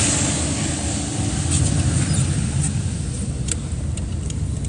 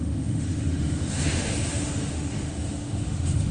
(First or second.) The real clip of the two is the first